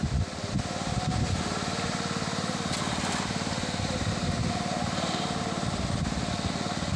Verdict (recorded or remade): recorded